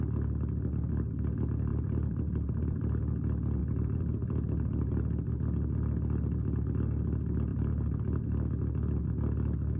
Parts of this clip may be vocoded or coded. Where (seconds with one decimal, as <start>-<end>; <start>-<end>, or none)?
1.7-3.0; 3.6-4.9; 7.5-8.2